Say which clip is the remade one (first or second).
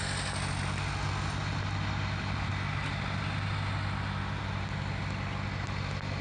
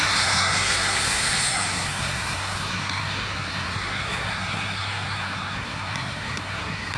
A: second